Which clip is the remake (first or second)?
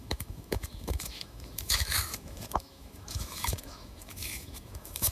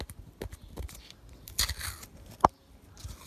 first